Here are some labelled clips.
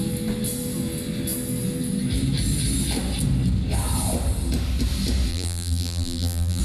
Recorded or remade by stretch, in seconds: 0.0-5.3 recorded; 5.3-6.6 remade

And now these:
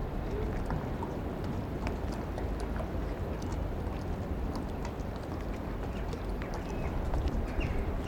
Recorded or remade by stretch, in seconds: 0.0-3.5 recorded; 3.5-6.7 remade; 6.7-8.1 recorded

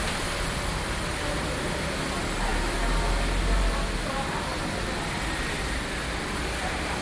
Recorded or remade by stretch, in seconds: 0.0-7.0 recorded

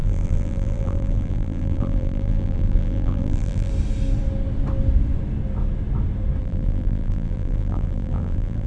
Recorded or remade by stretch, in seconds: 0.0-3.7 remade; 3.7-6.4 recorded; 6.4-8.7 remade

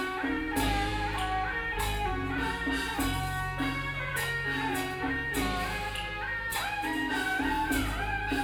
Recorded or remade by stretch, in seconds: 0.0-8.4 recorded